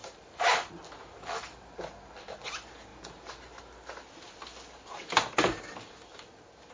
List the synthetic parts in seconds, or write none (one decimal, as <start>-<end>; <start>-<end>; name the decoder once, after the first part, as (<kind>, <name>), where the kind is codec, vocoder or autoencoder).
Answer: none